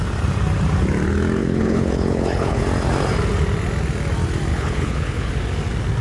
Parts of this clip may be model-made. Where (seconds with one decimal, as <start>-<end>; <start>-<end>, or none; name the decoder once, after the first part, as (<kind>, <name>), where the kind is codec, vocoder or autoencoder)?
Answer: 1.4-2.6 (codec, HILCodec); 4.5-5.3